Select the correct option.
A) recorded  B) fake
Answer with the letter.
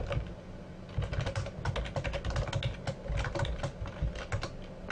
A